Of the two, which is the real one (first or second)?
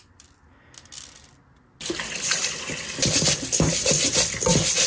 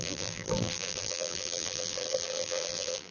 first